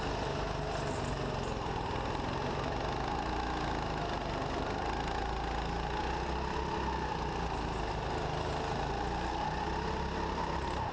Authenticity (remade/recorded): recorded